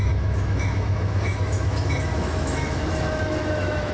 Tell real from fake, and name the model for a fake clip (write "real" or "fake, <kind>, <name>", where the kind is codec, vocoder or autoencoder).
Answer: fake, autoencoder, DAC-VAE